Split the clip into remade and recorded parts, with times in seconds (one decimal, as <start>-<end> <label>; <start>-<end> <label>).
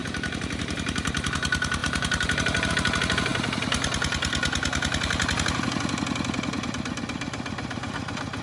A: 0.0-1.3 remade; 1.3-1.8 recorded; 1.8-2.7 remade; 2.7-8.4 recorded